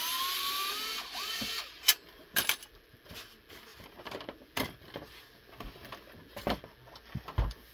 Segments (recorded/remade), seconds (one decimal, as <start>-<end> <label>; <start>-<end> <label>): 0.0-7.7 recorded